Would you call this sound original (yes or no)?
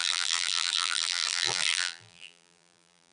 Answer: no